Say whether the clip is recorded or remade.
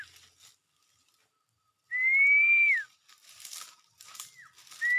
recorded